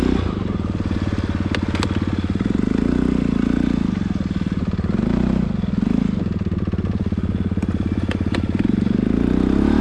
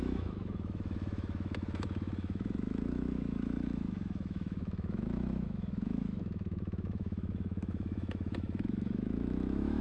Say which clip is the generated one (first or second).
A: second